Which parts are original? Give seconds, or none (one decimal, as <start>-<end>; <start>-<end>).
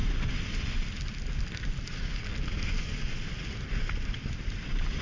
0.0-5.0